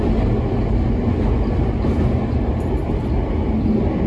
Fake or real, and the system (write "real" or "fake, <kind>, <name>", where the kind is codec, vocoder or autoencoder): real